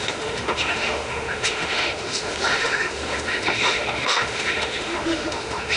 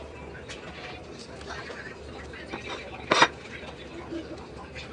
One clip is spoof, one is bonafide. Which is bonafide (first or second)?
second